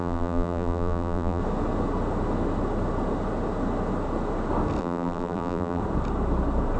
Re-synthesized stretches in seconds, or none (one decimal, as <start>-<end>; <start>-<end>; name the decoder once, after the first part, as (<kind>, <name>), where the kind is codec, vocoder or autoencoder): 0.0-1.4 (vocoder, BigVGAN v2); 4.8-5.8